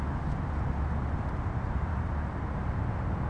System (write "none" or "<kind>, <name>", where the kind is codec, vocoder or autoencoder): none